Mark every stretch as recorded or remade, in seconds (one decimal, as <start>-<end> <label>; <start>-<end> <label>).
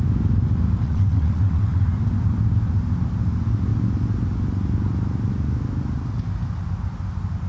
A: 0.0-0.8 recorded; 0.8-1.8 remade; 1.8-7.5 recorded